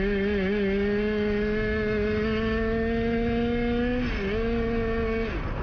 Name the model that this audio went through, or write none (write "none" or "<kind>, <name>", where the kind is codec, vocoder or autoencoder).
none